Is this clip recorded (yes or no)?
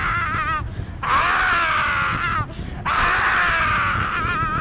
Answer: yes